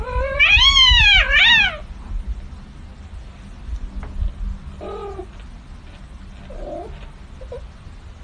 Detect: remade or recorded recorded